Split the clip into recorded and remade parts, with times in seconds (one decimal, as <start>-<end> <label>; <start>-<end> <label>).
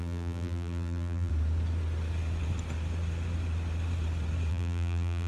0.0-1.3 remade; 1.3-4.5 recorded; 4.5-5.3 remade